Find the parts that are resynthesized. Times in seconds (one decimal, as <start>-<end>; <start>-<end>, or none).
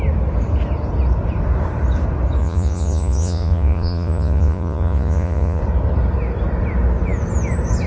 2.4-5.6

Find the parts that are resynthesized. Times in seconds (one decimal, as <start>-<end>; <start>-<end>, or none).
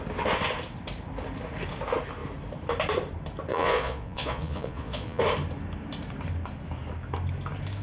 3.5-5.2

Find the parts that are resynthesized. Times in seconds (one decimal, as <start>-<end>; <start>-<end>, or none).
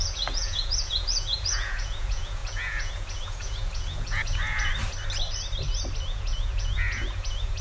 0.0-4.7; 6.0-7.6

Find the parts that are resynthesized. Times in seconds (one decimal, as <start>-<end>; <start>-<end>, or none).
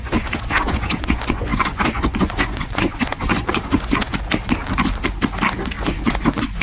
0.0-4.1; 5.8-6.6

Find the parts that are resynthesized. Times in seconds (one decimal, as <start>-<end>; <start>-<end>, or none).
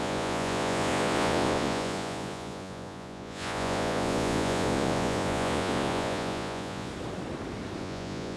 0.0-6.9; 7.8-8.4